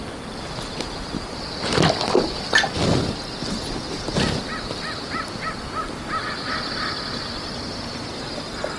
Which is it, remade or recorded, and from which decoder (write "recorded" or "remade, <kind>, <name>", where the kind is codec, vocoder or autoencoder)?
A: recorded